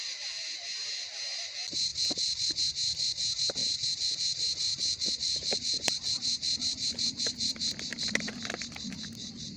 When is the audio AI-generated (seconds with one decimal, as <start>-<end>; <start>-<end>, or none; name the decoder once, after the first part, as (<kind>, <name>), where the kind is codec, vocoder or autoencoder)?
1.9-2.6 (vocoder, BigVGAN v2); 3.6-6.6